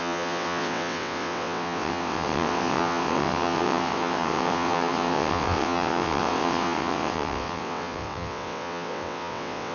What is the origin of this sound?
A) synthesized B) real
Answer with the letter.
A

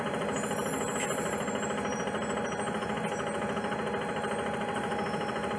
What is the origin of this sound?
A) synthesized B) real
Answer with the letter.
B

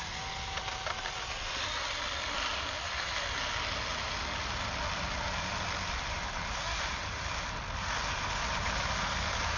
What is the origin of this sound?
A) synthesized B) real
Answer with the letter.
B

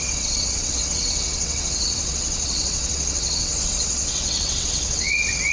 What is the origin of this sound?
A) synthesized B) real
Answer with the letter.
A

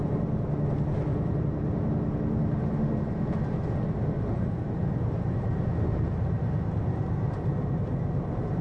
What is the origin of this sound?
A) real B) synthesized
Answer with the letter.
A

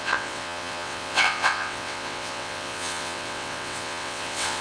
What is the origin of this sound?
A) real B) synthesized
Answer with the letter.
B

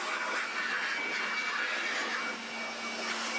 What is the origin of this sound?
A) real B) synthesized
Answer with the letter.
A